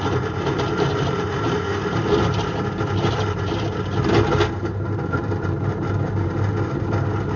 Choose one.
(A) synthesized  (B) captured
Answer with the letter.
A